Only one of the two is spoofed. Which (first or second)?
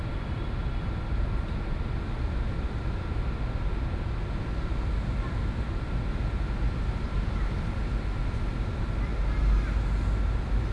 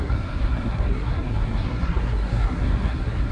second